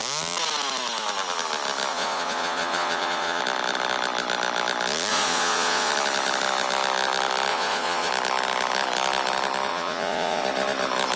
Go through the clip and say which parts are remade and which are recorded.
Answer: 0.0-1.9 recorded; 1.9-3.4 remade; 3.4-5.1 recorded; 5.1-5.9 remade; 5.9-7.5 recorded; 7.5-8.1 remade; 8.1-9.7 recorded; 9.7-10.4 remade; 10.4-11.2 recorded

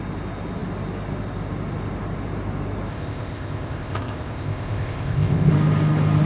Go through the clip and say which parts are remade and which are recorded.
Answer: 0.0-2.9 recorded; 2.9-5.5 remade; 5.5-6.3 recorded

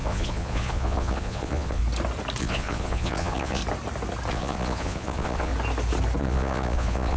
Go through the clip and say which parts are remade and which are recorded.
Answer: 0.0-1.8 remade; 1.8-2.4 recorded; 2.4-3.6 remade; 3.6-4.3 recorded; 4.3-5.5 remade; 5.5-6.2 recorded; 6.2-7.2 remade

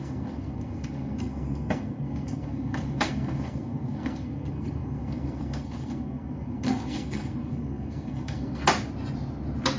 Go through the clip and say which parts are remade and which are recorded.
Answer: 0.0-8.6 remade; 8.6-9.8 recorded